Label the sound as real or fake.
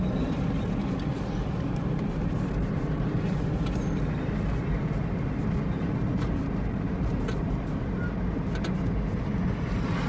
real